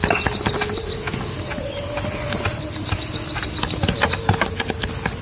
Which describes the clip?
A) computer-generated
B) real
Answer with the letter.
B